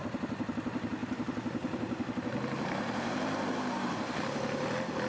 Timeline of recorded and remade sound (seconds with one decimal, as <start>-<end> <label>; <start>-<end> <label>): 0.0-1.0 recorded; 1.0-3.9 remade; 3.9-5.1 recorded